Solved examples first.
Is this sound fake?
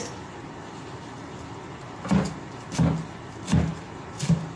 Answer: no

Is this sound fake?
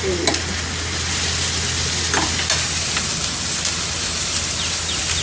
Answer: no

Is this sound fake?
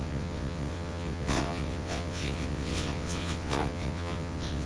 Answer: yes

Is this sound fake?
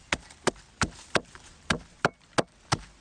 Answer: no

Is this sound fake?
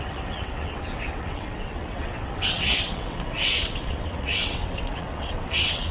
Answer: yes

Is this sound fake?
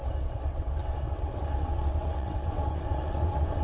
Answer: yes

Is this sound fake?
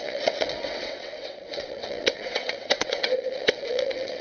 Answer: yes